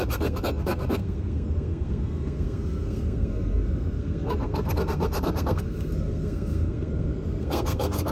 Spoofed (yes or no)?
yes